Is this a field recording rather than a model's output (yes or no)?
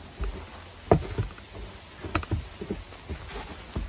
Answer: yes